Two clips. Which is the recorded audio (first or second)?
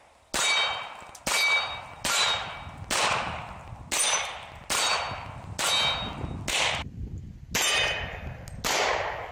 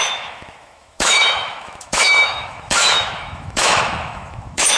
first